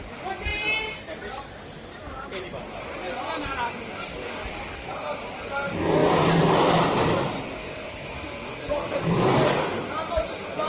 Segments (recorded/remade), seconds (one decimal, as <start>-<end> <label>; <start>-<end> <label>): 0.0-10.7 recorded